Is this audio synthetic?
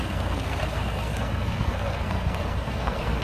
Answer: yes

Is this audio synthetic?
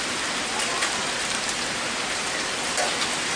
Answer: no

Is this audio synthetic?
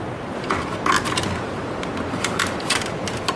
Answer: no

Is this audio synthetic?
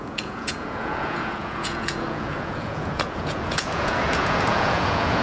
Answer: yes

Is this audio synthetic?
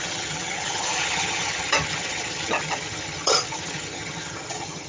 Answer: yes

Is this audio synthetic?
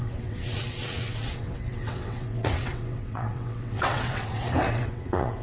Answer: yes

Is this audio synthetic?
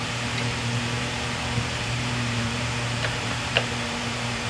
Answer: yes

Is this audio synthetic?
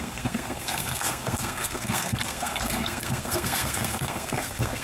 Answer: yes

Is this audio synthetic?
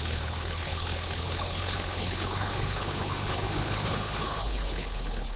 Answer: yes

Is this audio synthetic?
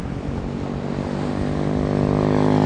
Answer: no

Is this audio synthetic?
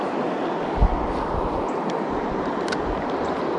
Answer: no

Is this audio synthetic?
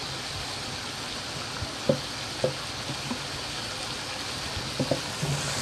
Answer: no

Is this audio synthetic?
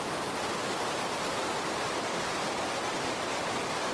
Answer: no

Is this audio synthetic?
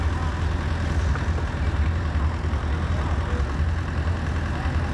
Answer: no